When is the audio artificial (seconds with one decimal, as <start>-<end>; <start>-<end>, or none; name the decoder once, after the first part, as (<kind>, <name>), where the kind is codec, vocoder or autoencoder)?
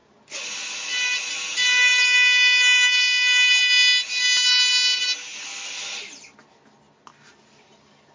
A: none